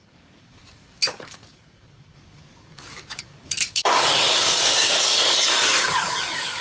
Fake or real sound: fake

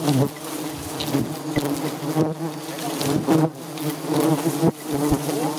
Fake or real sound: real